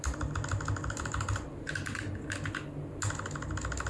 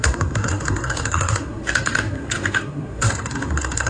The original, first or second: first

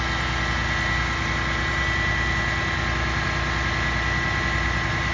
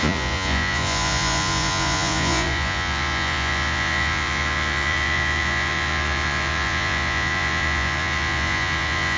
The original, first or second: first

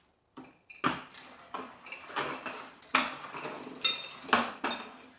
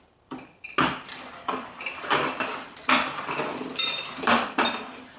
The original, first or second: first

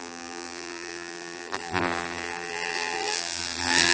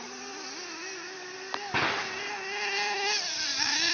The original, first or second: second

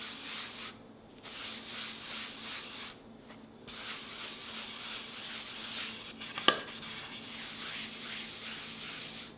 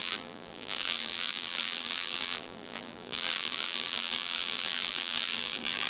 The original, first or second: first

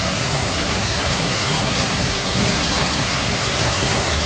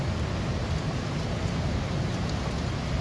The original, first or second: second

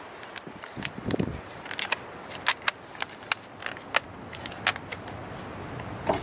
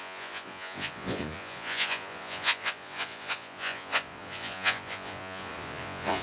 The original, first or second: first